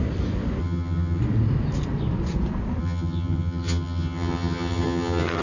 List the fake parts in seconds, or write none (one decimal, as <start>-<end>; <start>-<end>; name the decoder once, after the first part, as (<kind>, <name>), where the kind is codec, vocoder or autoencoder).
0.6-1.2 (vocoder, HiFi-GAN); 2.8-5.4